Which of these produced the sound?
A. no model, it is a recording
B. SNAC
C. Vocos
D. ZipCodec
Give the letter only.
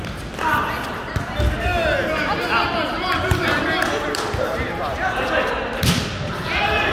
A